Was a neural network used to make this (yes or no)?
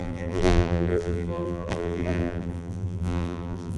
yes